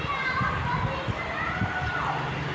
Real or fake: real